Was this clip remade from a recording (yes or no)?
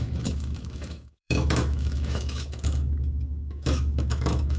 yes